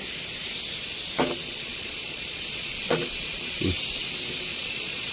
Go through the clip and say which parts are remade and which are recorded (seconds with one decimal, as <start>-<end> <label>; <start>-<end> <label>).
0.0-1.2 recorded; 1.2-3.6 remade; 3.6-4.5 recorded; 4.5-5.1 remade